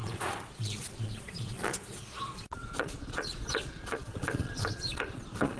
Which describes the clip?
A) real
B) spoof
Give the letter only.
B